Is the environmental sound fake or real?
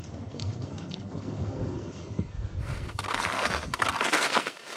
fake